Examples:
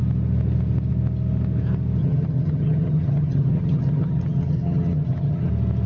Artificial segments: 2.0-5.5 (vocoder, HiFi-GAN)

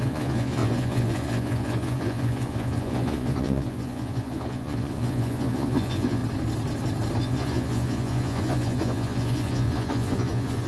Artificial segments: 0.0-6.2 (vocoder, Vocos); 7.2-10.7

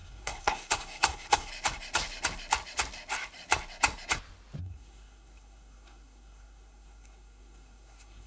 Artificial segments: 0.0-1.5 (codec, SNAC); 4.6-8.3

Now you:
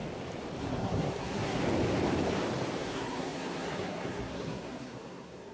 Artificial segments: 0.6-1.6 (codec, SNAC); 2.8-5.5

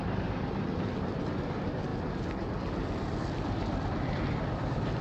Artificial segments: none

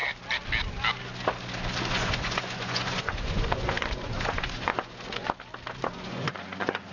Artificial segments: 1.9-5.2 (vocoder, Vocos); 5.9-6.9